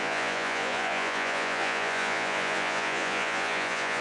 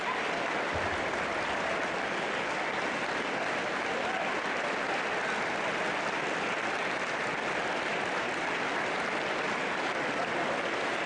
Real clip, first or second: second